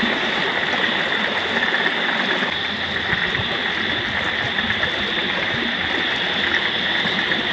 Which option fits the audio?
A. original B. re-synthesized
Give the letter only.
A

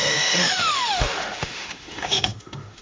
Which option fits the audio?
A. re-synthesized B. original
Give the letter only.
A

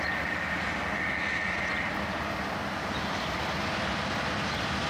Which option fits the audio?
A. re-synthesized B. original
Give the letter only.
B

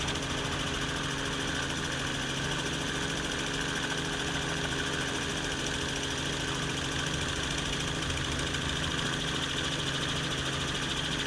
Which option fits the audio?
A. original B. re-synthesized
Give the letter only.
A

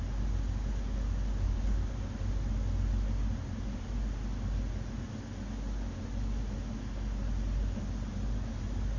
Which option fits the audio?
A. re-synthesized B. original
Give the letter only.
B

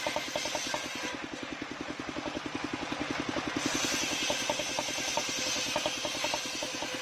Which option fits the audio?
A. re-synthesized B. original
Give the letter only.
B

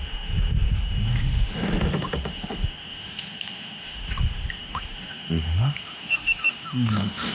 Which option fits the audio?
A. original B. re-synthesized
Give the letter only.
B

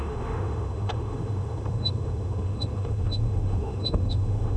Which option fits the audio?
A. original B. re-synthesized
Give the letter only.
B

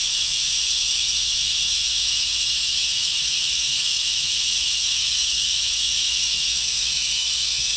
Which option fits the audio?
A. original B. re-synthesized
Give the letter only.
B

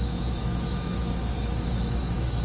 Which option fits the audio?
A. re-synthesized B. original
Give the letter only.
A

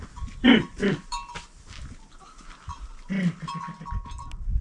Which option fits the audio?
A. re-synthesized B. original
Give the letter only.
B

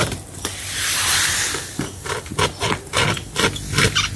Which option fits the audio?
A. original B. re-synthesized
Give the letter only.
A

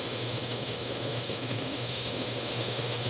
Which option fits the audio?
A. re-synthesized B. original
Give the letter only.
A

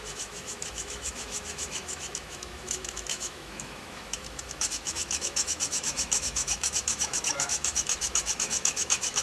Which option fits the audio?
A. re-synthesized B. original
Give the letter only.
A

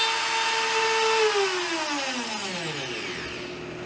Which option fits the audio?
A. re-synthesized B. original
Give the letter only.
B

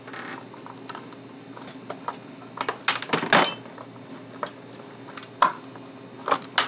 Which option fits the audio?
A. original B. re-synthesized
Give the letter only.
A